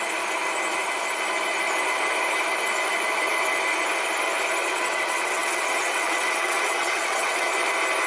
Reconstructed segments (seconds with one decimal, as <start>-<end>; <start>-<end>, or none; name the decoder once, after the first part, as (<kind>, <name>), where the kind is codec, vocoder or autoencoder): 4.6-7.5 (vocoder, WaveNeXt)